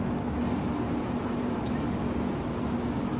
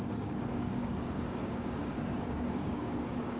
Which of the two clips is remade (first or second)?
second